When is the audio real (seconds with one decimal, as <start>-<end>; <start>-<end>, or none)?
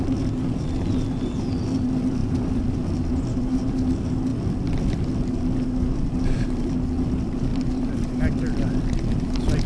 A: 0.0-2.2; 3.5-4.3; 5.0-7.5